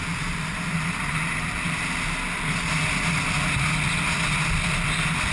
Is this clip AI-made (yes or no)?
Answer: no